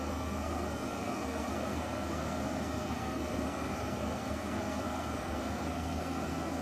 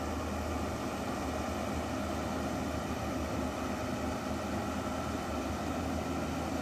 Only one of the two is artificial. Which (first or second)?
first